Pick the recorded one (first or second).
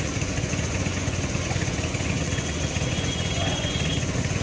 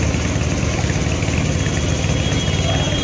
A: second